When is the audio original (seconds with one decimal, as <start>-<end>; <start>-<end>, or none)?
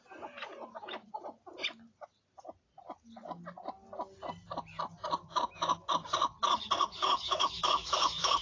0.0-5.2; 5.9-7.0